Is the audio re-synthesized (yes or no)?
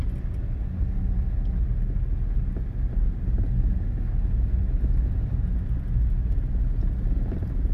no